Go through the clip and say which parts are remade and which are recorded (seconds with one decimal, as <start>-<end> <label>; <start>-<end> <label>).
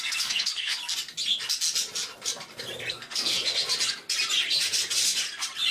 0.0-0.8 remade; 0.8-2.9 recorded; 2.9-3.4 remade; 3.4-5.7 recorded